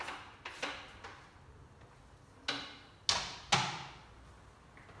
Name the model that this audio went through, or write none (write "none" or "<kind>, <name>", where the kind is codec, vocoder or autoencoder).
none